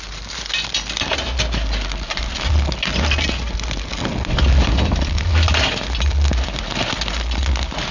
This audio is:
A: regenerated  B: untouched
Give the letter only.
B